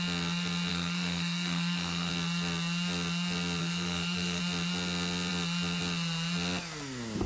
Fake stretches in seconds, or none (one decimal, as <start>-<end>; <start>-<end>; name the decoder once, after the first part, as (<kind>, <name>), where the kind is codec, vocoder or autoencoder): 0.7-2.1 (codec, SNAC); 3.6-4.4